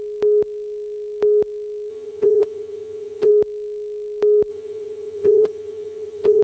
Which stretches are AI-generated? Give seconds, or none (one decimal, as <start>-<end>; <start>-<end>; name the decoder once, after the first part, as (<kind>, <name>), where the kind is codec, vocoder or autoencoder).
1.9-3.3 (vocoder, HiFi-GAN); 4.5-6.4